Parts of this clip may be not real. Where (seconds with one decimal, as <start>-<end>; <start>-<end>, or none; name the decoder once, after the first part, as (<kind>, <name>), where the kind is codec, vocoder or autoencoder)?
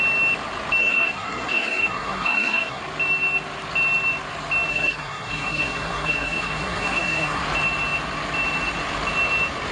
0.8-2.8 (codec, SNAC); 4.7-7.4